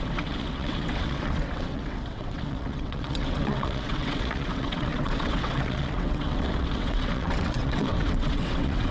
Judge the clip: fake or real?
fake